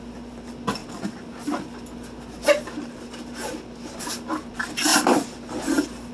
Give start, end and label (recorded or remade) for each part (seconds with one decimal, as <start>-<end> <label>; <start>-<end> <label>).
0.0-6.1 recorded